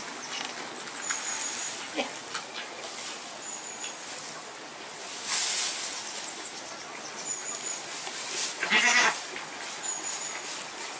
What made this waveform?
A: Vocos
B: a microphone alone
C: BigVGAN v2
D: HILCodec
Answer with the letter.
B